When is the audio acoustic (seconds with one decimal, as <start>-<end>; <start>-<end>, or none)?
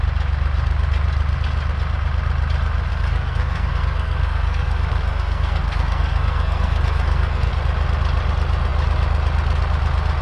0.0-2.9; 7.5-10.2